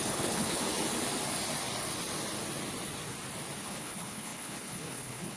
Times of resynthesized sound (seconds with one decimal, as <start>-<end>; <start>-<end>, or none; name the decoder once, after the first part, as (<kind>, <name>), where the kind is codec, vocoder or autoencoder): 0.0-0.6 (codec, HILCodec); 3.6-5.4